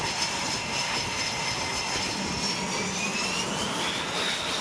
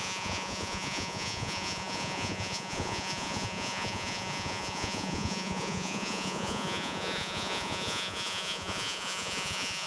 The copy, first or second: second